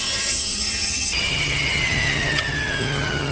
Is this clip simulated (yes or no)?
yes